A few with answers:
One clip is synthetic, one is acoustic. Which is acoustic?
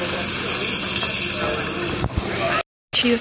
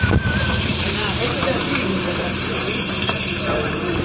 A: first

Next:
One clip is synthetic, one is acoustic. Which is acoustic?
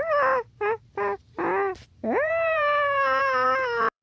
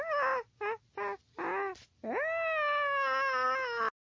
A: second